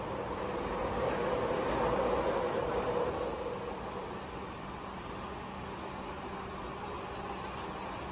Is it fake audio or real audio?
real